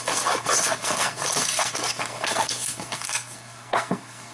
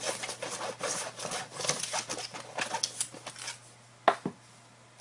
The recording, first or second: second